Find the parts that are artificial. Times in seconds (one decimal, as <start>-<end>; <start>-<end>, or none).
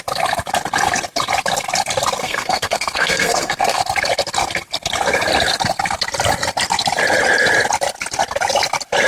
2.2-3.8